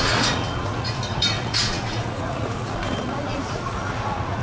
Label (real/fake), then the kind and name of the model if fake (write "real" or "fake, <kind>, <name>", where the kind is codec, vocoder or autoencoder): fake, vocoder, Vocos